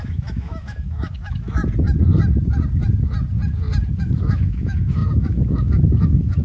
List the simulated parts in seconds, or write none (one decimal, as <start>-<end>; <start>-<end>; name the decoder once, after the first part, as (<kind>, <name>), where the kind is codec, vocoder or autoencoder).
0.0-1.6 (autoencoder, DAC-VAE); 4.0-6.4